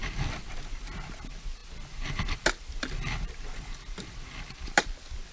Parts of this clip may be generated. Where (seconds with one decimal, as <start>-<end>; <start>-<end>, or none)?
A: none